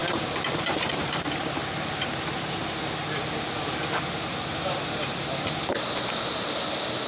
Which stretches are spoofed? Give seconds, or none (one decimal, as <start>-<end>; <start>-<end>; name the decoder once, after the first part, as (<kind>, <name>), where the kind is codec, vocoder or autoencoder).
0.6-1.6 (vocoder, BigVGAN v2); 4.1-7.1